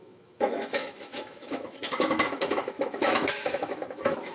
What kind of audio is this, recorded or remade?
remade